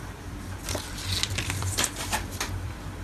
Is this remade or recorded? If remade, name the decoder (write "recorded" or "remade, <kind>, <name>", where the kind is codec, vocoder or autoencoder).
remade, vocoder, BigVGAN v2